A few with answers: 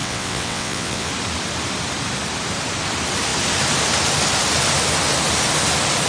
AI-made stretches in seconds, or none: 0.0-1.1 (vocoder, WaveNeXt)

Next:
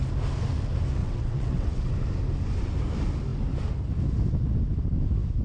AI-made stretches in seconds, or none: 1.0-1.9 (vocoder, WaveNeXt)